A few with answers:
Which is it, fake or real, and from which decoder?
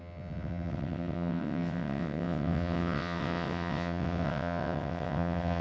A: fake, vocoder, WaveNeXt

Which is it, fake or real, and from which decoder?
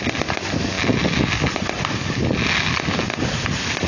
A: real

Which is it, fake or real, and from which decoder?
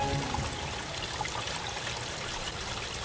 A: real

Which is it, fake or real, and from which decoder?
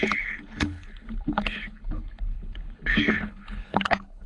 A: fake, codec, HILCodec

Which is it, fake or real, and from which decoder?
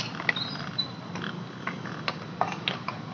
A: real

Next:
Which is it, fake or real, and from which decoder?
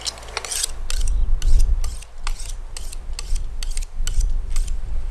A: real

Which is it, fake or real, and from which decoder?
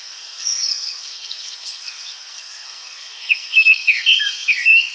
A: fake, codec, SNAC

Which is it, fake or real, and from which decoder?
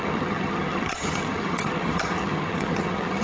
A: fake, vocoder, HiFi-GAN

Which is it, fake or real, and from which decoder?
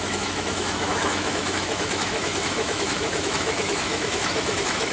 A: fake, autoencoder, DAC-VAE